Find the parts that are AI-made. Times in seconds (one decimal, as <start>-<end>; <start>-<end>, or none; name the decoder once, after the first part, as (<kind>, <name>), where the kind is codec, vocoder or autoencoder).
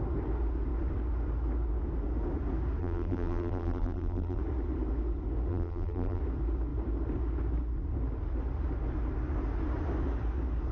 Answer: 2.8-4.4 (vocoder, BigVGAN v2); 5.5-6.2